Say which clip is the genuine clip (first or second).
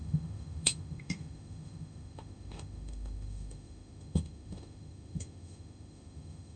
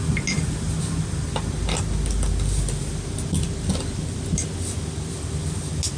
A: second